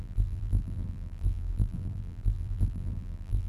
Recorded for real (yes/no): no